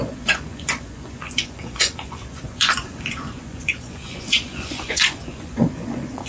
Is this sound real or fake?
fake